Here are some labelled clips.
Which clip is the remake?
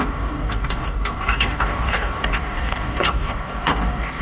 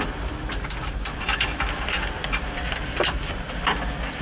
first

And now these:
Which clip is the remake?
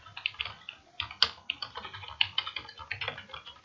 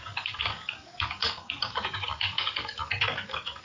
second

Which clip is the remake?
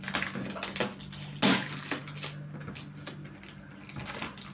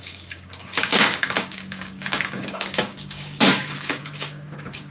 second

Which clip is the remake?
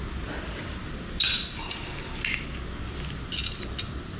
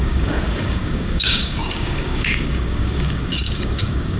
second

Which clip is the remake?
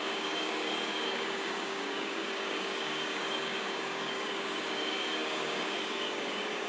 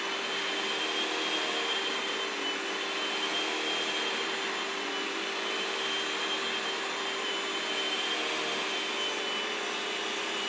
first